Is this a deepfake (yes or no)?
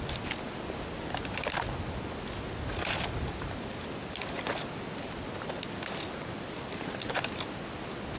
no